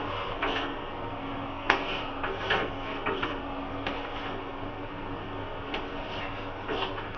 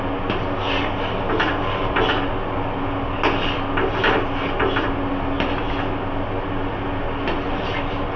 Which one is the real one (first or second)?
second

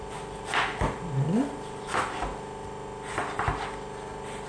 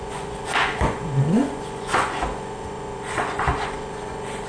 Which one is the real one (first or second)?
first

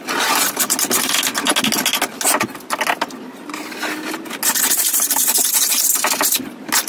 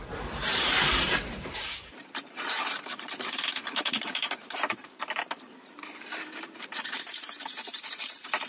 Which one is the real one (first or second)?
first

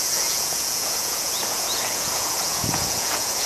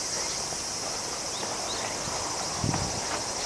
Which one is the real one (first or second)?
second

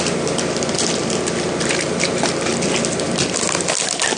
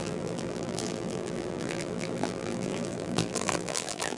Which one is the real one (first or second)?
first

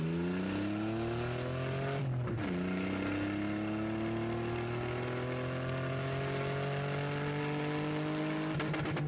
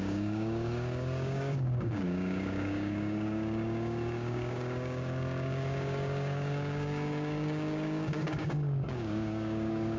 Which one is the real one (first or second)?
first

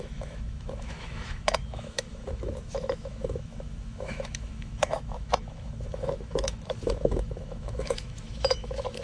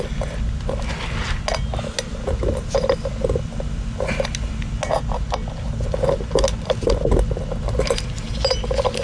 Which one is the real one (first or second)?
second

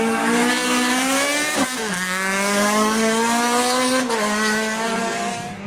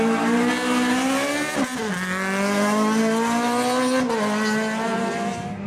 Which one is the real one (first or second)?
second